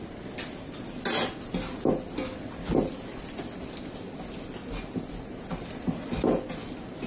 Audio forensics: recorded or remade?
recorded